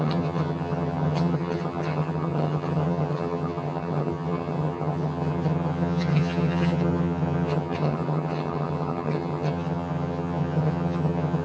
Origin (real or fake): fake